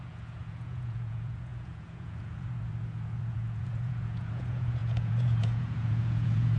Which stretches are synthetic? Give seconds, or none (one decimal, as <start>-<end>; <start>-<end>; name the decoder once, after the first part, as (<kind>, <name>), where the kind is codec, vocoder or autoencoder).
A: 0.0-6.6 (vocoder, Vocos)